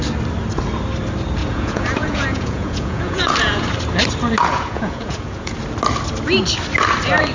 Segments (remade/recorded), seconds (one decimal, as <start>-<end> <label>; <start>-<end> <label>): 0.0-1.4 recorded; 1.4-3.7 remade; 3.7-4.4 recorded; 4.4-5.6 remade; 5.6-7.3 recorded